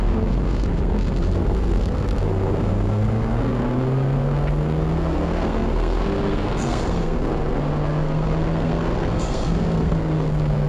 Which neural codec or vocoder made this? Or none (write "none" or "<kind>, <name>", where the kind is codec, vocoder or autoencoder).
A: codec, SNAC